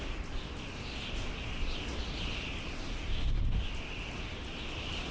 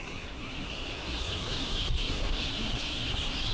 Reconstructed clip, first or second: second